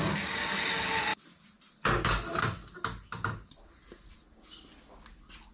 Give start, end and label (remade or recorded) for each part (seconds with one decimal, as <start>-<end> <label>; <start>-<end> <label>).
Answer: 0.0-1.1 recorded; 1.1-2.4 remade; 2.4-5.5 recorded